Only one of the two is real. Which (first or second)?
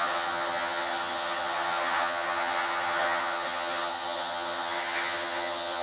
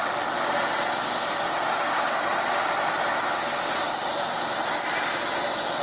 second